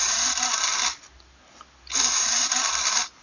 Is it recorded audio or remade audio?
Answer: recorded